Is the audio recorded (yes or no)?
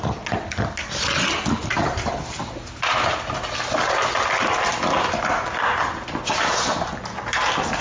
yes